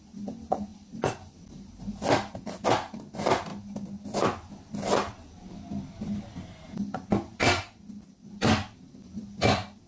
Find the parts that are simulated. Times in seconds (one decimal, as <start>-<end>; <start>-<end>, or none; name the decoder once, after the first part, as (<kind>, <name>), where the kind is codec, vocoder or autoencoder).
none